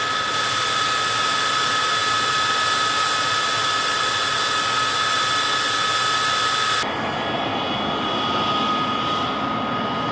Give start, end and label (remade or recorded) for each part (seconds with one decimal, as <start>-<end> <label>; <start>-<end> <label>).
0.0-10.1 recorded